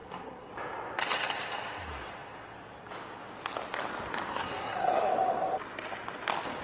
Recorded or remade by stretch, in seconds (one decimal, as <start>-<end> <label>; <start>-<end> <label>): 0.0-0.5 remade; 0.5-4.3 recorded; 4.3-5.1 remade; 5.1-6.6 recorded